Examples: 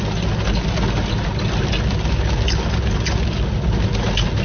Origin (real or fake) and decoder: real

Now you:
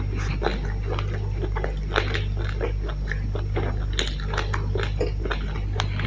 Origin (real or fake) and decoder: real